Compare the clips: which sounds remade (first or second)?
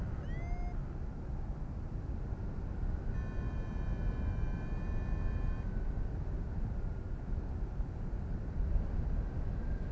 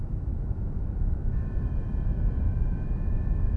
second